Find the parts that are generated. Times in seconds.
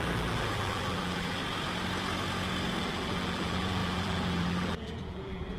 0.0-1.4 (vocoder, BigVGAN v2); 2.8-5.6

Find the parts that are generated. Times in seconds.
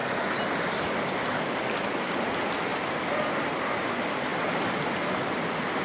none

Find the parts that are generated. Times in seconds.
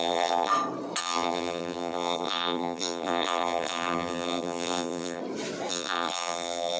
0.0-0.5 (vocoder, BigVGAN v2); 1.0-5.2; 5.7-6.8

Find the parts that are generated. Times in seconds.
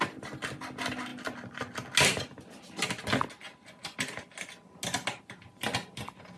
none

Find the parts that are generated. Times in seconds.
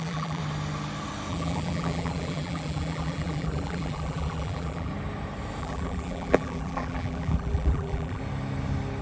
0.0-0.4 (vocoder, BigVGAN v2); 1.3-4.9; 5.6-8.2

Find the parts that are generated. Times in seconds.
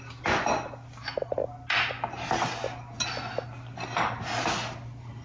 none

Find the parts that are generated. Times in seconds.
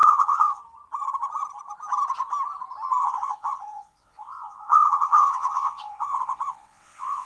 0.0-0.6 (vocoder, WaveNeXt); 3.0-7.3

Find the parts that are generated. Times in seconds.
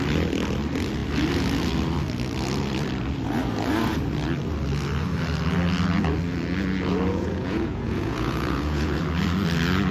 7.1-9.0 (vocoder, Vocos)